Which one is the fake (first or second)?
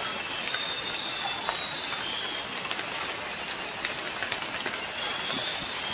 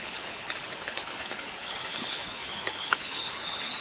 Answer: second